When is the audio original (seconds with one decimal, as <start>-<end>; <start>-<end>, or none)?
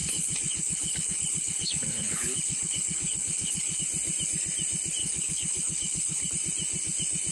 3.8-5.0; 6.3-7.3